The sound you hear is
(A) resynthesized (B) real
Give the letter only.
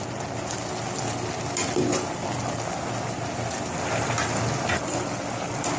B